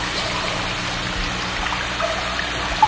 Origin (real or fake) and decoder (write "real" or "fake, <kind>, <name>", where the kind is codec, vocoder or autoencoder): real